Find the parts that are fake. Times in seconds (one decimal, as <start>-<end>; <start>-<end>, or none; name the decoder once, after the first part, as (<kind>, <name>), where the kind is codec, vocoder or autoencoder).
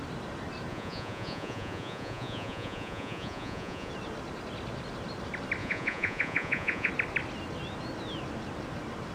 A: 0.7-3.9 (vocoder, Vocos); 5.6-6.9